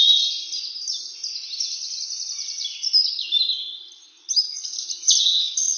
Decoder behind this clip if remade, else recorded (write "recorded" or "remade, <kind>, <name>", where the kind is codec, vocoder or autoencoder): recorded